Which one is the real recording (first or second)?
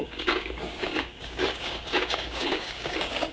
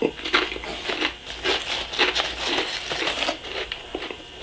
second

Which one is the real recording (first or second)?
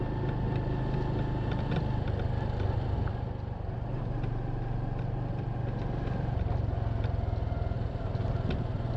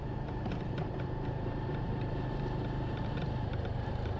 first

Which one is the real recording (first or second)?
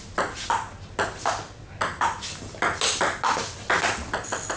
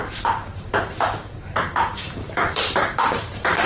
first